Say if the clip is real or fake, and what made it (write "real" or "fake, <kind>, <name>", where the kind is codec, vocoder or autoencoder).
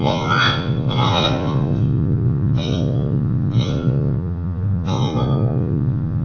fake, vocoder, Vocos